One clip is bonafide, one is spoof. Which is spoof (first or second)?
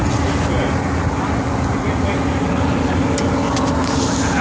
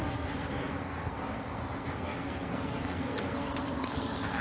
second